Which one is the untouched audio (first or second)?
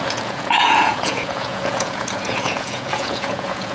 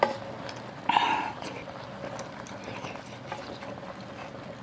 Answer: second